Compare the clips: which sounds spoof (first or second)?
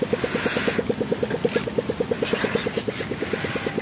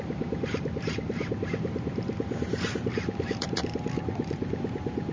second